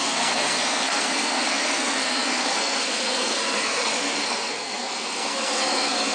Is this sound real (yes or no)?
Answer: no